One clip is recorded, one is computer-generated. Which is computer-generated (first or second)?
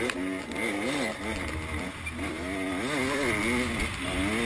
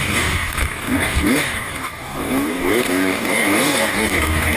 second